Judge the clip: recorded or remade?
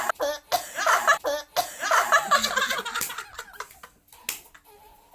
recorded